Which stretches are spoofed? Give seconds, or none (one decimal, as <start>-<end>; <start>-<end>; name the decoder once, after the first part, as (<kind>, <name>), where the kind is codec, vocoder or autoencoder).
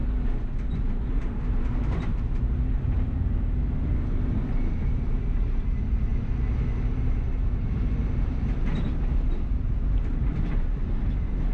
0.7-11.5 (vocoder, BigVGAN v2)